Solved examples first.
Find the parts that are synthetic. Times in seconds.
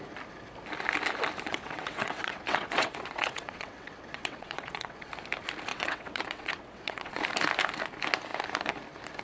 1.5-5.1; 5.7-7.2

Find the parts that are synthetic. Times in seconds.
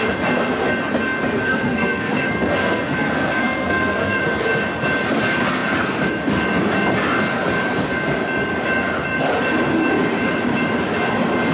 1.4-4.2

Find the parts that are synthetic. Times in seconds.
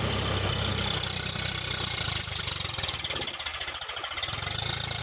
0.7-2.4